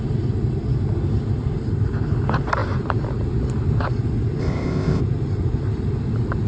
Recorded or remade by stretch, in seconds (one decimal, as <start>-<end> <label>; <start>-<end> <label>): 0.0-4.4 recorded; 4.4-5.0 remade; 5.0-6.5 recorded